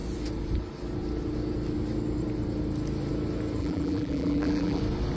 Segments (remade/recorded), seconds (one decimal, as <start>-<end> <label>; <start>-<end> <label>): 0.0-3.6 recorded; 3.6-4.8 remade; 4.8-5.2 recorded